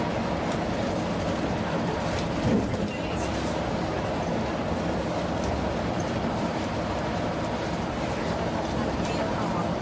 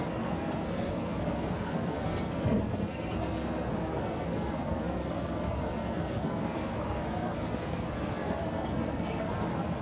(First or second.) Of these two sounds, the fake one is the second